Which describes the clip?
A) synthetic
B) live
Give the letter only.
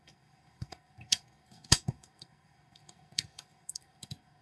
A